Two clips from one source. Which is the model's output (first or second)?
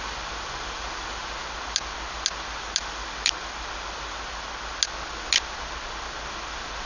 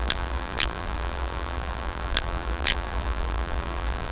second